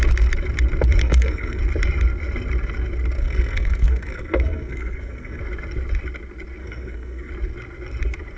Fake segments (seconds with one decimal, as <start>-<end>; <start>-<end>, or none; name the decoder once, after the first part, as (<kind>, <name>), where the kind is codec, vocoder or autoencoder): 1.0-1.6 (codec, SNAC); 3.2-5.4; 6.6-7.3